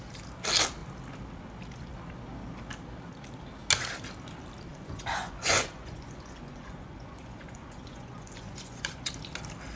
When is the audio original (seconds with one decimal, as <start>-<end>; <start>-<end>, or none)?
0.0-4.7; 9.1-9.8